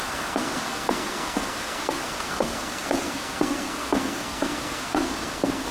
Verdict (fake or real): fake